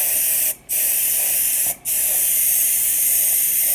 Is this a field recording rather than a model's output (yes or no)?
no